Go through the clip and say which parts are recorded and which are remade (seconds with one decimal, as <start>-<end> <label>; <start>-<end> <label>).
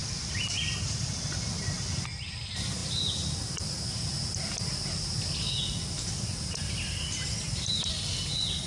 0.0-1.2 remade; 1.2-8.7 recorded